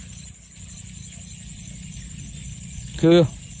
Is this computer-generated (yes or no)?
no